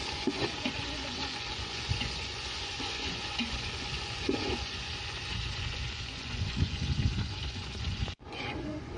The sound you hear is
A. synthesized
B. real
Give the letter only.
A